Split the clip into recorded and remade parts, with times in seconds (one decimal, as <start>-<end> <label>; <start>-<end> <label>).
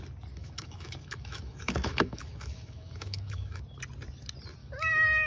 0.0-0.4 recorded; 0.4-3.6 remade; 3.6-4.6 recorded; 4.6-5.3 remade